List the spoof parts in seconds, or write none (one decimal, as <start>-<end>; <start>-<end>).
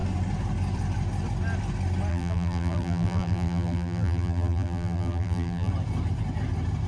2.1-5.7